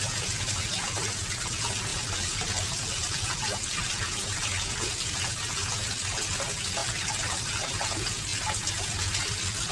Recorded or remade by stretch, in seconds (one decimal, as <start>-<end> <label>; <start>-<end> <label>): 0.0-6.8 recorded; 6.8-7.6 remade; 7.6-9.7 recorded